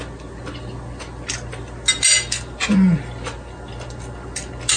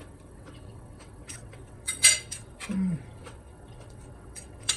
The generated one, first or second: second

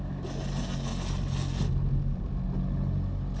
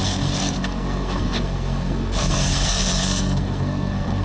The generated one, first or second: second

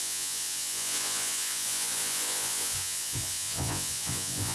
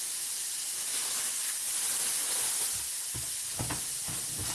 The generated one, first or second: first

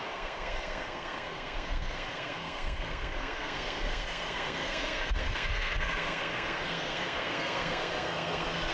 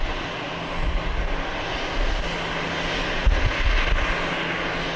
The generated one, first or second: first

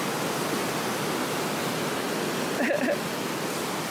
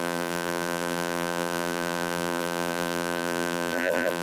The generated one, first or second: second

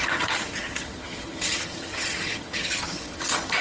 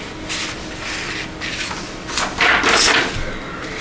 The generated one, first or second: first